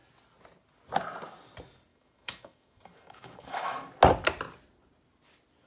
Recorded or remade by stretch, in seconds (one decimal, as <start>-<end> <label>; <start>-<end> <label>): 0.0-1.9 recorded; 1.9-3.9 remade; 3.9-5.7 recorded